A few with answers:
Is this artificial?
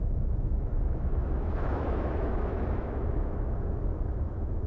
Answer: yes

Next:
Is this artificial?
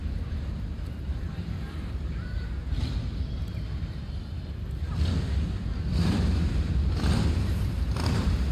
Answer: yes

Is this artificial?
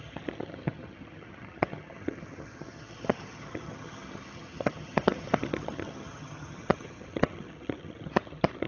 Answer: yes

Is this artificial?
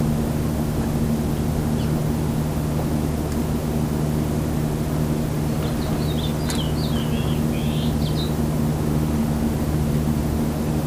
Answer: no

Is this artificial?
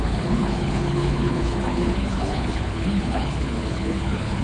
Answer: yes